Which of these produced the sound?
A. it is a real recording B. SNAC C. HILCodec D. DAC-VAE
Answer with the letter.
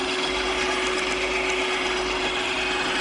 A